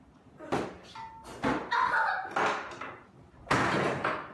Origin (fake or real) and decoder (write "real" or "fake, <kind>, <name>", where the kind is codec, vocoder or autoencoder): real